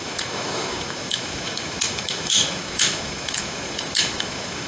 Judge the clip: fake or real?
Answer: fake